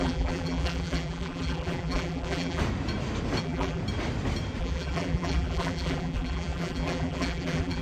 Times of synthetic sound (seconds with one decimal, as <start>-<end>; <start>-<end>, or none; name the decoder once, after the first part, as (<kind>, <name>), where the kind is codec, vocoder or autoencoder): 0.0-2.6 (vocoder, BigVGAN v2); 3.4-3.8; 4.6-7.8